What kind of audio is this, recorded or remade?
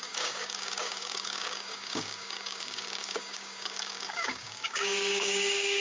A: remade